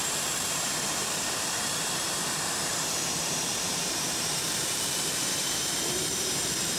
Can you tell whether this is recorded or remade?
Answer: remade